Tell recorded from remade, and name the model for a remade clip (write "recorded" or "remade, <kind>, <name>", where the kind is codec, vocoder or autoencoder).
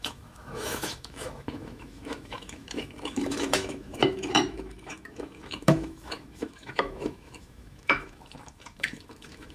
remade, autoencoder, DAC-VAE